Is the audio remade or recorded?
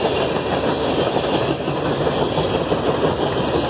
recorded